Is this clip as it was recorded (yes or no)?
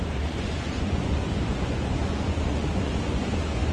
no